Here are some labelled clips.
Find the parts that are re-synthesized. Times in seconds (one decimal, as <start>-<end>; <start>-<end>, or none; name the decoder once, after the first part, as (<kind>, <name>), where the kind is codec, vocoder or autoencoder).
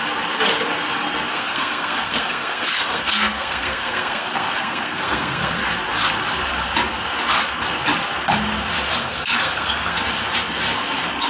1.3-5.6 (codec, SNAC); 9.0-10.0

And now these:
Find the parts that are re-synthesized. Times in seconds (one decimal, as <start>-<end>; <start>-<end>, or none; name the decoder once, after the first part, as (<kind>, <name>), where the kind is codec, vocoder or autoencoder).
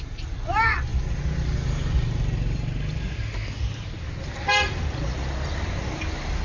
none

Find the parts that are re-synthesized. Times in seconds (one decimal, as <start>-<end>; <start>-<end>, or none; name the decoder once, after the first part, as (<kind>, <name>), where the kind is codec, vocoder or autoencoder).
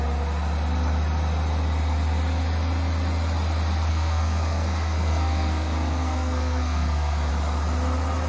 3.9-7.3 (codec, SNAC)